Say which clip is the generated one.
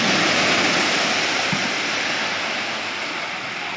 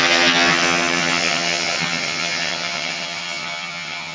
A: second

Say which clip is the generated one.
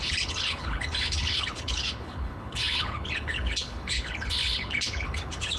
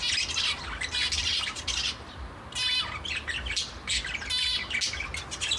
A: first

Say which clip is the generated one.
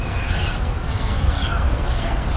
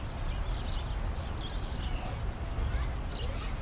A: first